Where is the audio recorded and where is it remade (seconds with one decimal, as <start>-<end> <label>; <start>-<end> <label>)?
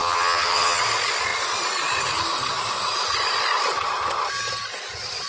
0.0-0.8 remade; 0.8-5.3 recorded